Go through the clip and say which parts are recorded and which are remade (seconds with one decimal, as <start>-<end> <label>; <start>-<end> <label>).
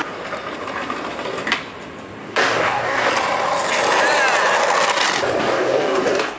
0.0-2.2 recorded; 2.2-3.1 remade; 3.1-5.4 recorded; 5.4-6.4 remade